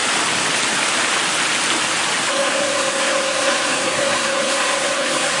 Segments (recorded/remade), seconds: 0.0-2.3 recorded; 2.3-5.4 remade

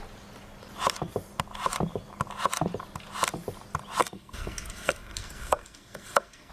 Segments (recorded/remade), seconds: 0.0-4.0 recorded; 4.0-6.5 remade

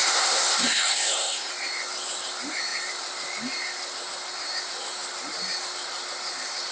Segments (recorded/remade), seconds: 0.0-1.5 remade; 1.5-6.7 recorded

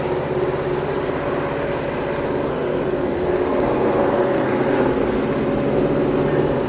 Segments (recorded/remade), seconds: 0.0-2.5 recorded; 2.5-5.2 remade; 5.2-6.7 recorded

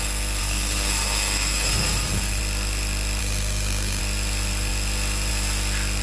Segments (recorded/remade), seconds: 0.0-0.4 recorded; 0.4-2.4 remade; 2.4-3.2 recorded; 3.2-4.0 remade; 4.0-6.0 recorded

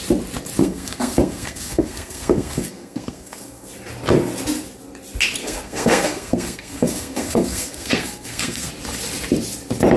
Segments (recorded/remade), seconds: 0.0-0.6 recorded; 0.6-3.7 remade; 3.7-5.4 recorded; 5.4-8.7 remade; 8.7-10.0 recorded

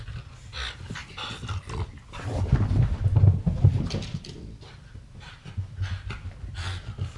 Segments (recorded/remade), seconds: 0.0-7.2 recorded